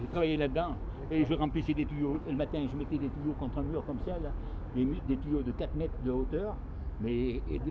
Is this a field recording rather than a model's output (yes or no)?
no